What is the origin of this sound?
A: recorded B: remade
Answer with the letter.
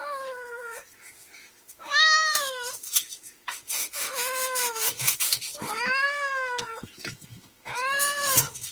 B